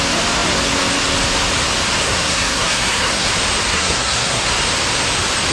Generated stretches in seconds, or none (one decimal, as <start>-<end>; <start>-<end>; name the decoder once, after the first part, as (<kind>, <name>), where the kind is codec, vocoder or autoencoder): 2.0-3.3 (codec, SNAC); 3.7-4.5